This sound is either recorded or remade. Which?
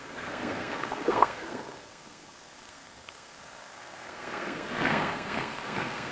remade